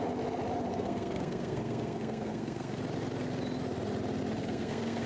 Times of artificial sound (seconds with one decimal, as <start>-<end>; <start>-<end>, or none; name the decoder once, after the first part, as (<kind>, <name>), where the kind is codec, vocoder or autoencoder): 0.7-2.8 (codec, SNAC); 4.4-5.1